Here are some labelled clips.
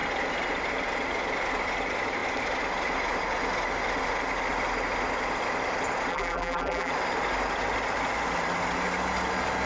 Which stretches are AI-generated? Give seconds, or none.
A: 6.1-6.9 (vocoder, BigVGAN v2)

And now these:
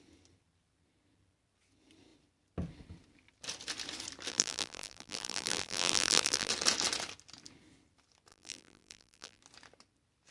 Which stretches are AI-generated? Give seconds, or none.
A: 4.3-6.5 (vocoder, BigVGAN v2); 8.3-9.4

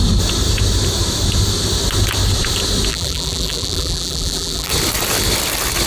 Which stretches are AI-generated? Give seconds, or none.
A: 2.9-4.7 (vocoder, BigVGAN v2)

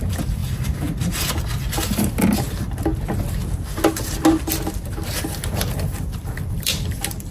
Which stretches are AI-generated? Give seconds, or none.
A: 0.0-0.4 (vocoder, BigVGAN v2); 1.7-2.9; 4.7-7.3